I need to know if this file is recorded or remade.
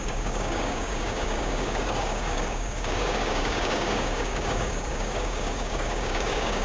remade